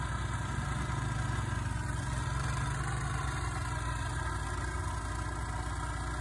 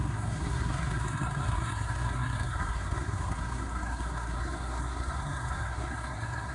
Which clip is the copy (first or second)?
second